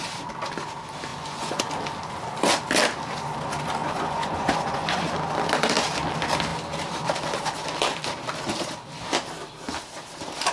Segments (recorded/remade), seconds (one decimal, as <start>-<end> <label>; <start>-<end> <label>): 0.0-1.1 recorded; 1.1-1.6 remade; 1.6-3.8 recorded; 3.8-5.1 remade; 5.1-10.5 recorded